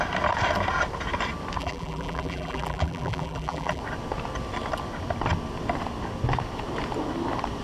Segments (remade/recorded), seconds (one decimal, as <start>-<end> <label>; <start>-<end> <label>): 0.0-1.6 recorded; 1.6-3.8 remade; 3.8-7.6 recorded